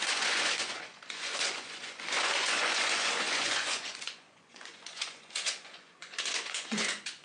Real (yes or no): no